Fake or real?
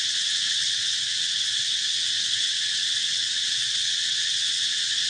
fake